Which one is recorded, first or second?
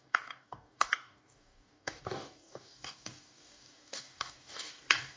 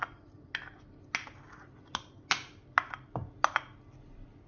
second